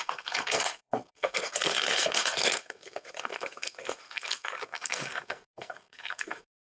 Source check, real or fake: fake